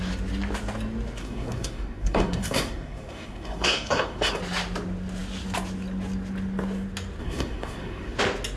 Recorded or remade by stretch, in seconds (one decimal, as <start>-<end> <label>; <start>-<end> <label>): 0.0-1.2 recorded; 1.2-4.4 remade; 4.4-7.2 recorded; 7.2-8.2 remade; 8.2-8.6 recorded

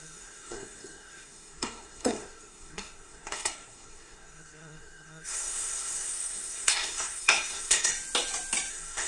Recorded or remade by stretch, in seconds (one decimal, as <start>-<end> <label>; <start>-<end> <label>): 0.0-7.9 remade; 7.9-8.7 recorded; 8.7-9.1 remade

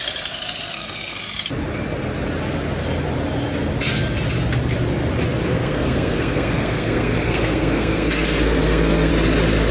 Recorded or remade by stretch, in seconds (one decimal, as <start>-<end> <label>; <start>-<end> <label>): 0.0-0.7 recorded; 0.7-1.2 remade; 1.2-5.5 recorded; 5.5-9.1 remade; 9.1-9.7 recorded

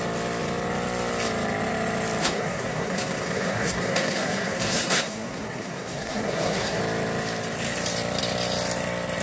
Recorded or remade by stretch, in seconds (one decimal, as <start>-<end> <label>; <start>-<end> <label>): 0.0-2.2 recorded; 2.2-6.8 remade; 6.8-9.2 recorded

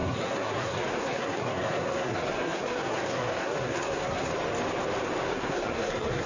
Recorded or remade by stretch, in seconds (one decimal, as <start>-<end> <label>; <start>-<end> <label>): 0.0-4.3 remade; 4.3-5.3 recorded; 5.3-6.3 remade

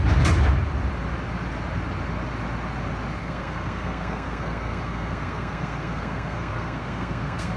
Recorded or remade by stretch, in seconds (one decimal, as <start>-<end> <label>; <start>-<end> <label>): 0.0-3.2 recorded; 3.2-7.6 remade